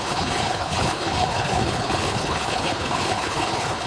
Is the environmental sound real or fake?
fake